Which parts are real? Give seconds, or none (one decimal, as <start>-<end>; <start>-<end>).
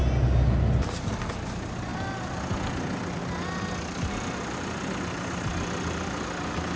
0.0-6.8